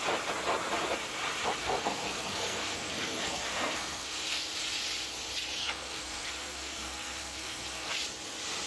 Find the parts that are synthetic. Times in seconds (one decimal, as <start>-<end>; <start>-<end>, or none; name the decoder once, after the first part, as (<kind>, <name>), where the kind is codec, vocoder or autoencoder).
1.6-4.4 (codec, SNAC); 5.6-7.9